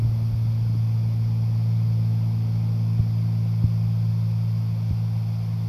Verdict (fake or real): real